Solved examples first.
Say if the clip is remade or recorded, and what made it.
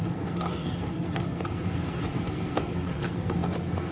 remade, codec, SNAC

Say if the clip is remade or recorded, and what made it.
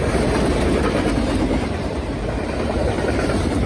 remade, vocoder, BigVGAN v2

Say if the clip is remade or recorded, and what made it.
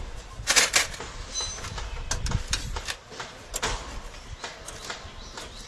recorded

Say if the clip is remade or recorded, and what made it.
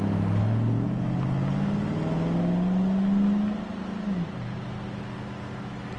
recorded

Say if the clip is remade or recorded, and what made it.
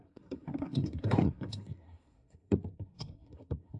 remade, codec, SNAC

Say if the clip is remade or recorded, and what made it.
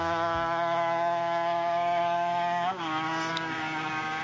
remade, codec, DAC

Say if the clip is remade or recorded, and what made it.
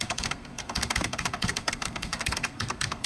remade, codec, SNAC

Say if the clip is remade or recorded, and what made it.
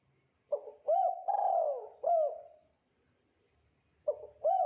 recorded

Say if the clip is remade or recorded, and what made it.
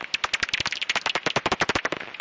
recorded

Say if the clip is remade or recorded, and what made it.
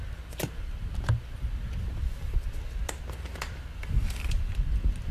recorded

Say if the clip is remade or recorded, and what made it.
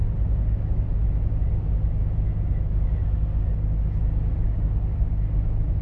recorded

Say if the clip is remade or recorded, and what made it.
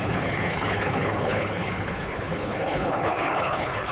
remade, codec, HILCodec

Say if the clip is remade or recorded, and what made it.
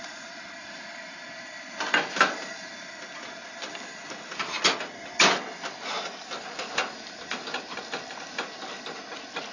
recorded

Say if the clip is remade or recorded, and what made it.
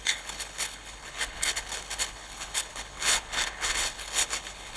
remade, codec, HILCodec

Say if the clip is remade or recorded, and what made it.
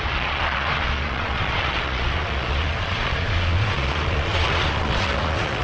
remade, vocoder, Vocos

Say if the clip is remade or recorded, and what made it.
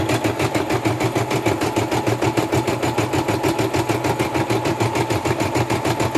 recorded